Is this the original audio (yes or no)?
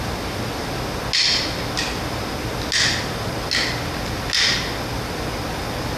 yes